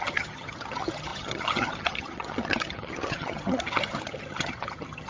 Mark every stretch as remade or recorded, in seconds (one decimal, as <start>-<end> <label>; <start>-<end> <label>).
0.0-5.1 remade